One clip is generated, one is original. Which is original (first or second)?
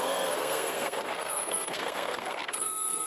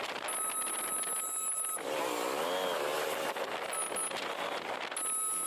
second